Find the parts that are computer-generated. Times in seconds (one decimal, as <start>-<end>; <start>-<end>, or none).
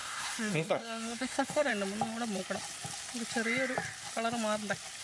0.0-1.7